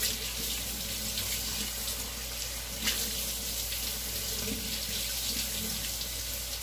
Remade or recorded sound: recorded